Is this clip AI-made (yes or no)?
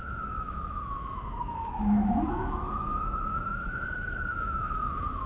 yes